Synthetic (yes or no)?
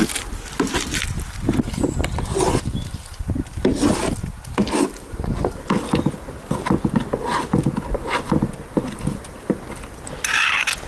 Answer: no